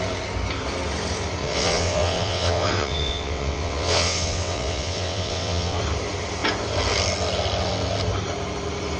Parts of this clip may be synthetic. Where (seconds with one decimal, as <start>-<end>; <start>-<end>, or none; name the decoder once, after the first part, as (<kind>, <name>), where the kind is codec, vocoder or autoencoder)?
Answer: 1.4-5.8 (vocoder, WaveNeXt)